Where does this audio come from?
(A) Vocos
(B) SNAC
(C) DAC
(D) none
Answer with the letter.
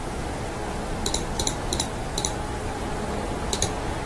D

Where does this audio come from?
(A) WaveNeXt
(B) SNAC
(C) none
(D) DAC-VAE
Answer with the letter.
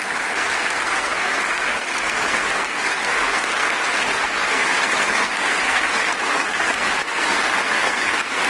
B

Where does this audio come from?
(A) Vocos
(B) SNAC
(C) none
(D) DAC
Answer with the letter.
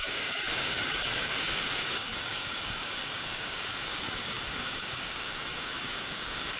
D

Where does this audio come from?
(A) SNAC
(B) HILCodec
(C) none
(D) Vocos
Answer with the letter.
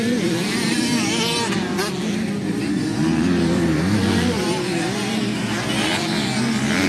C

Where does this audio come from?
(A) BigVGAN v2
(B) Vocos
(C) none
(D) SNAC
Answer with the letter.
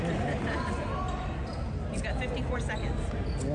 C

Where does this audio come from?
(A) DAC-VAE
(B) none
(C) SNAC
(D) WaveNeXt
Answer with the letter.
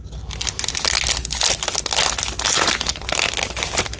B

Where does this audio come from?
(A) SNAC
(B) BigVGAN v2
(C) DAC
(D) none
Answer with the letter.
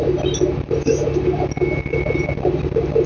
D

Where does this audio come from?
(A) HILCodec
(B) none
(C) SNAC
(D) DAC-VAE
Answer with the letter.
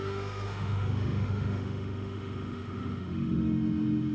D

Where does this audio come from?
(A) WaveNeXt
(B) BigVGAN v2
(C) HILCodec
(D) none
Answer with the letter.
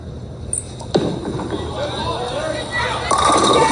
D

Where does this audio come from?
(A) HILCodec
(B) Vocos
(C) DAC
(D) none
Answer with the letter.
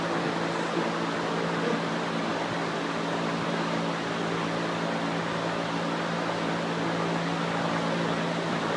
D